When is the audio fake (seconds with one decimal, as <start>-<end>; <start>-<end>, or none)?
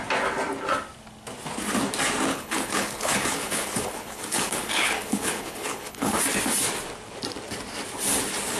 2.3-6.2